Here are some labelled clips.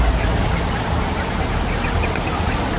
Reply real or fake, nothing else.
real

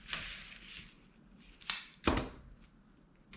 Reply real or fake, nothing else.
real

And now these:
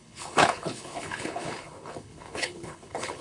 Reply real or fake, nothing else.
fake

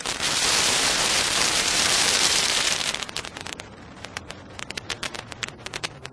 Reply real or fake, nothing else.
fake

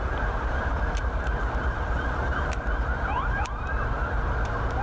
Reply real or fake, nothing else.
fake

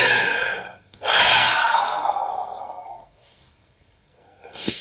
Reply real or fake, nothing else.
fake